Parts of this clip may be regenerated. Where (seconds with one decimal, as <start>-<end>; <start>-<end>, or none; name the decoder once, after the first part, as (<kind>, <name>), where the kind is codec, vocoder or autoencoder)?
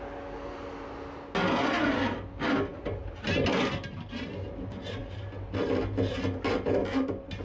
none